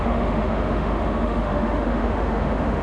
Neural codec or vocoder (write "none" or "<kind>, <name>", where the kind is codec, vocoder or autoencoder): autoencoder, DAC-VAE